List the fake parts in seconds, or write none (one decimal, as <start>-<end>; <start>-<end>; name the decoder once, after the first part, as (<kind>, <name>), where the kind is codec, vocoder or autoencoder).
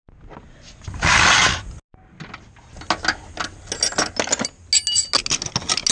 none